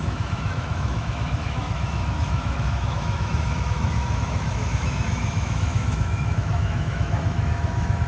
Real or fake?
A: fake